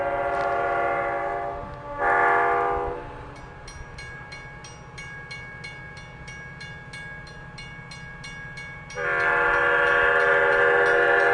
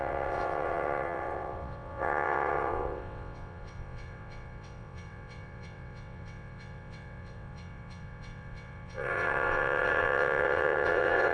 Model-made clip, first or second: second